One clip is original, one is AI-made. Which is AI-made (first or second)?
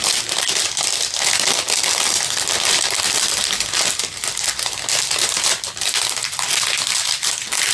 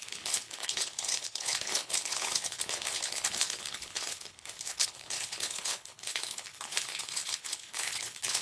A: second